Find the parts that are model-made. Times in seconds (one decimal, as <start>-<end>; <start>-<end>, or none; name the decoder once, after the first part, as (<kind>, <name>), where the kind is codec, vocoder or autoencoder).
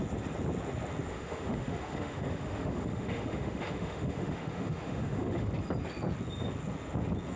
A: 1.1-5.5 (autoencoder, DAC-VAE)